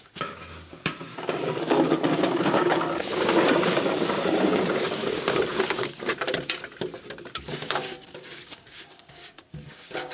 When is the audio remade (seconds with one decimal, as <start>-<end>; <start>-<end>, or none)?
0.0-5.0; 5.6-6.1; 7.3-10.1